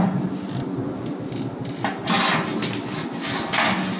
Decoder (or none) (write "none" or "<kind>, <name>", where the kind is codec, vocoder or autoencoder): none